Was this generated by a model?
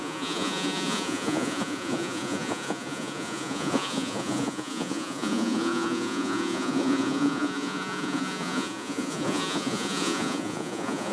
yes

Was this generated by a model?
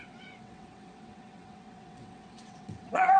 yes